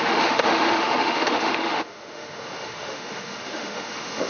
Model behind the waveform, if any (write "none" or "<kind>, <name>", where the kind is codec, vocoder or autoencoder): autoencoder, DAC-VAE